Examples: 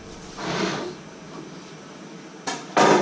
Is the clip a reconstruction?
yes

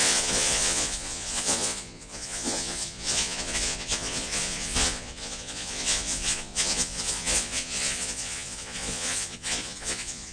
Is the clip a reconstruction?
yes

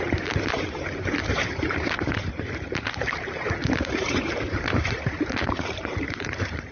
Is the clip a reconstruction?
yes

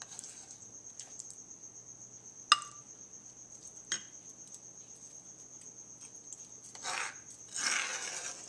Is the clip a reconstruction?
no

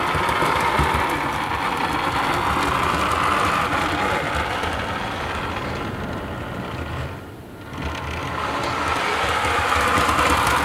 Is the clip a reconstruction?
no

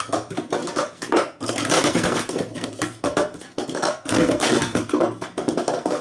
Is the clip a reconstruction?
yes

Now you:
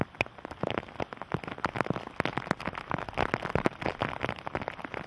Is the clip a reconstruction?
no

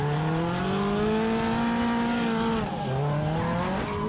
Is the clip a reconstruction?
no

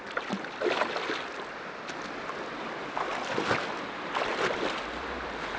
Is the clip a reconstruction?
no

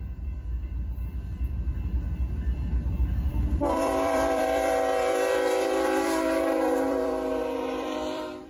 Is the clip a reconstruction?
yes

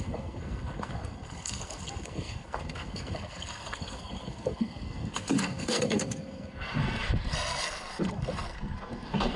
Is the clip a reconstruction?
yes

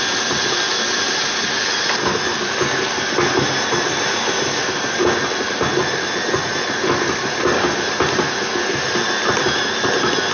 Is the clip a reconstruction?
no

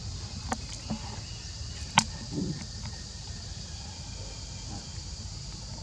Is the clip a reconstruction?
yes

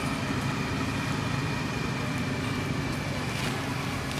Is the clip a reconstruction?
no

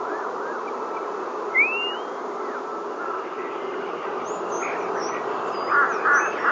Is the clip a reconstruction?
no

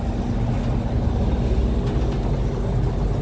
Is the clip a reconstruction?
no